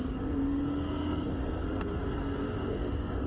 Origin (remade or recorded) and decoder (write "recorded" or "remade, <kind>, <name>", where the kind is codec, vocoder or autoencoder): remade, codec, SNAC